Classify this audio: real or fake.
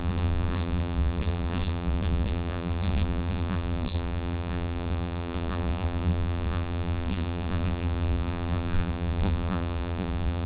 fake